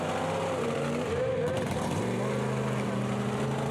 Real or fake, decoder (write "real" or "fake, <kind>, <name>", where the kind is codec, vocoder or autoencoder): real